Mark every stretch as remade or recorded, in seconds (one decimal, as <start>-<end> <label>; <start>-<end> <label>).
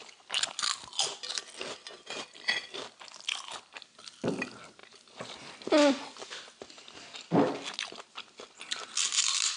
0.0-9.6 recorded